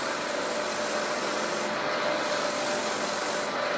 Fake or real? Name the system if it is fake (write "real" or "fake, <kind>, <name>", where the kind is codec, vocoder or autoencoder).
real